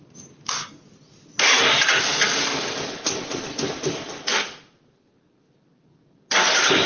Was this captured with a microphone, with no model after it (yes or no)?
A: yes